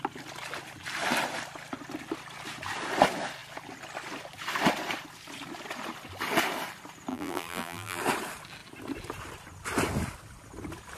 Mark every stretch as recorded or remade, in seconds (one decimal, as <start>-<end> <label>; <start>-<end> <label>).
0.0-7.1 recorded; 7.1-8.0 remade; 8.0-11.0 recorded